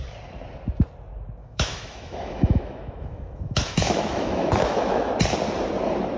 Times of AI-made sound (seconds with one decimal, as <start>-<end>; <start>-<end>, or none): 1.4-5.1